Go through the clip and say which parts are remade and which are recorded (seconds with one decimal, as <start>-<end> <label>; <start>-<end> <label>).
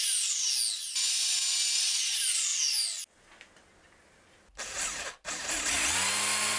0.0-6.6 recorded